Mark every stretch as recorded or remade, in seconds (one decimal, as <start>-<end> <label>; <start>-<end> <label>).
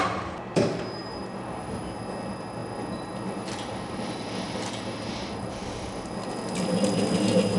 0.0-7.6 recorded